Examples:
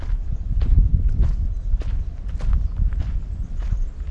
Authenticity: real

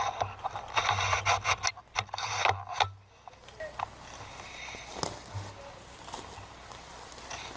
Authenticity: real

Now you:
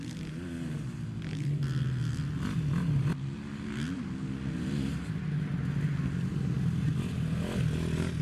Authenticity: real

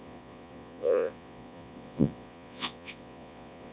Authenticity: fake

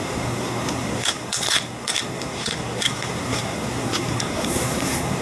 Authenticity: fake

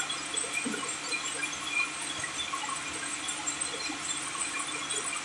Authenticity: real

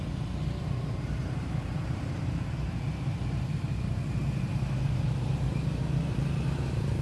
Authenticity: fake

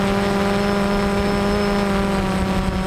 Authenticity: real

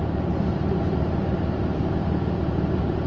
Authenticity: fake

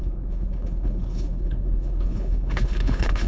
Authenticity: fake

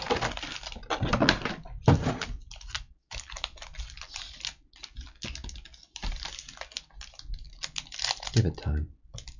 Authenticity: real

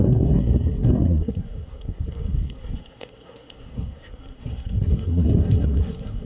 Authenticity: fake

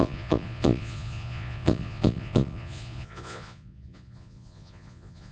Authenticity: fake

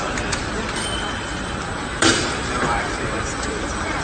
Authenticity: fake